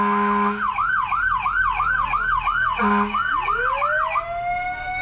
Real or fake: real